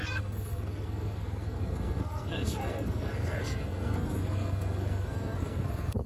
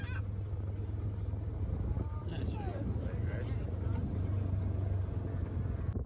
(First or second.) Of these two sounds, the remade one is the first